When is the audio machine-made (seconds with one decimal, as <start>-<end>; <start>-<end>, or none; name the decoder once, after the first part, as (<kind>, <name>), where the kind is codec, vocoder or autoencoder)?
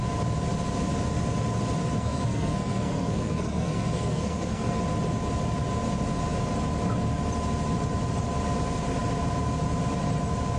2.0-4.8 (codec, SNAC)